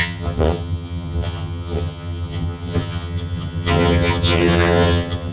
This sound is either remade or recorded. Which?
remade